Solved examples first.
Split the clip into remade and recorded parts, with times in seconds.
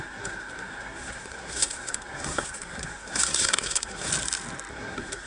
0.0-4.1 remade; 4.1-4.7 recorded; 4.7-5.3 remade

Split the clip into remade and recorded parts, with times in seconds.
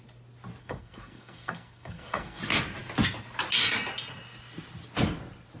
0.0-0.6 recorded; 0.6-2.4 remade; 2.4-5.6 recorded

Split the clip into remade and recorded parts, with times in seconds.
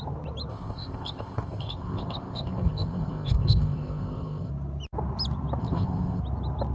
0.0-0.5 recorded; 0.5-4.5 remade; 4.5-5.6 recorded; 5.6-6.2 remade; 6.2-6.7 recorded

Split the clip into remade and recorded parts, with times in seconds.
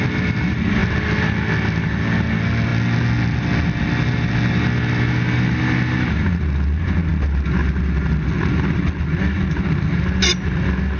0.0-11.0 recorded